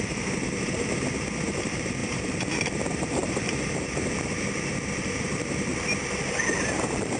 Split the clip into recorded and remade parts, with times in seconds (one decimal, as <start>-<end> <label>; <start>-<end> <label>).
0.0-5.7 remade; 5.7-6.6 recorded; 6.6-7.2 remade